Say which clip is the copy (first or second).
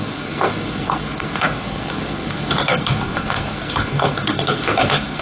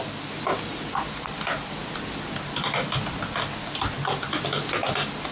first